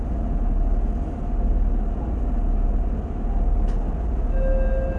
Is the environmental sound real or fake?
real